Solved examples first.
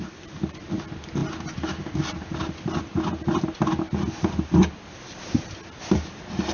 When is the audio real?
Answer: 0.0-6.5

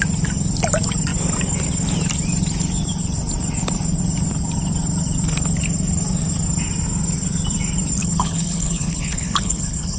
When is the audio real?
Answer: 0.0-8.0